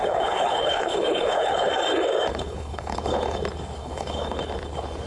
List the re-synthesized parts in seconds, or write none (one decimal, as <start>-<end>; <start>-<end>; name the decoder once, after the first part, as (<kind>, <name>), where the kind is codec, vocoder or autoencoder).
0.0-1.7 (codec, HILCodec); 2.3-3.4; 3.8-4.5